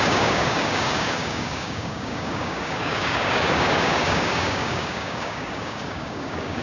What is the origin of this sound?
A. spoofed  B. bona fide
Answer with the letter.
A